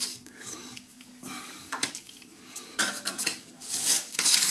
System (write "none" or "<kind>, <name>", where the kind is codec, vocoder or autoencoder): codec, DAC